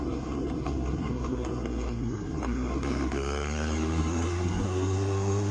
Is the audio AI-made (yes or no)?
yes